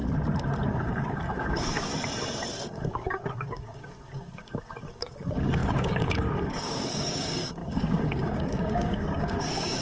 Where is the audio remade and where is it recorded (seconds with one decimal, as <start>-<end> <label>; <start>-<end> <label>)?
0.0-0.7 recorded; 0.7-1.9 remade; 1.9-2.5 recorded; 2.5-9.8 remade